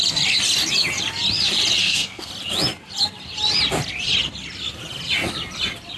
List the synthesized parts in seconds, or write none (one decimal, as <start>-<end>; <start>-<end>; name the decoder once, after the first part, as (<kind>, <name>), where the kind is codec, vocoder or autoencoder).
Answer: 1.8-2.3 (codec, SNAC)